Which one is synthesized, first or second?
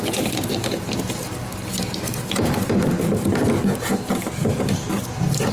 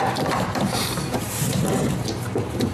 second